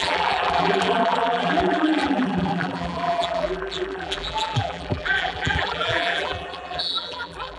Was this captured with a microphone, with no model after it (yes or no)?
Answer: no